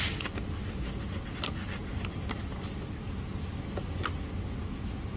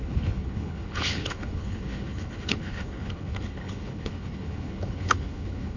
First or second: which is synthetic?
second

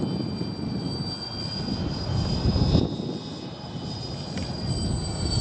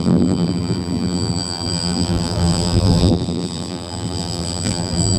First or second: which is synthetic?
second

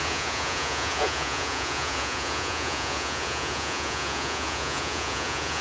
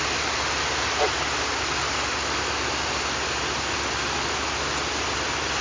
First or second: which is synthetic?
first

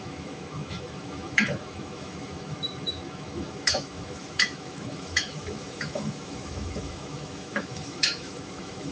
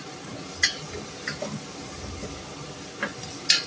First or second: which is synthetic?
first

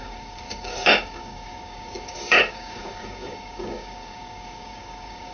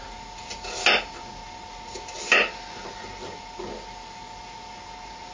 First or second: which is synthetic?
first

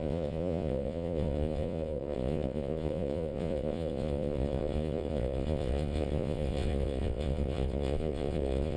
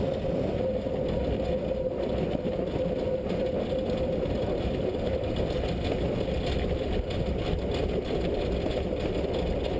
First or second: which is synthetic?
first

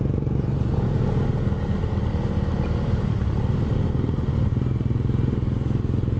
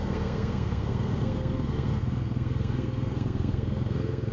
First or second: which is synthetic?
second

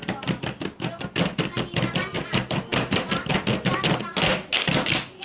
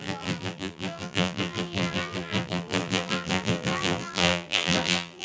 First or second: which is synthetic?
second